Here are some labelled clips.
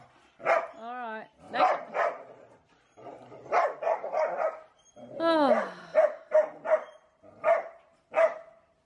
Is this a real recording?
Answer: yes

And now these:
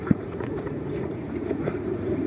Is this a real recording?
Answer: no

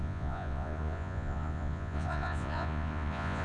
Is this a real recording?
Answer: no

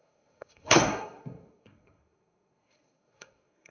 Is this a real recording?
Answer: no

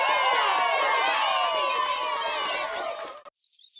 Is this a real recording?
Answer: yes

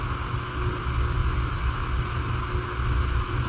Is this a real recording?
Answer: yes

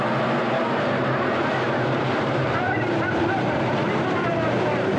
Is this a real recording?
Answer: no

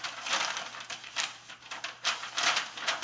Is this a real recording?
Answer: yes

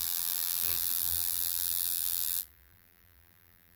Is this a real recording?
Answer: no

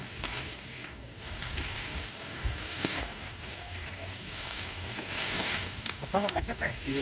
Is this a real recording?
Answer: no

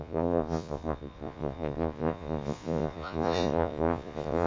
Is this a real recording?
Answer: no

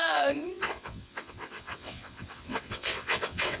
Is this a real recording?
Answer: no